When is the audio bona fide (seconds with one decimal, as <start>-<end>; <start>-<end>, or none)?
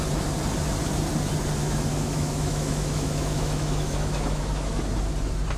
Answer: 0.0-1.6; 4.8-5.6